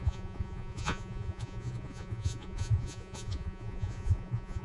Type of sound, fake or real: fake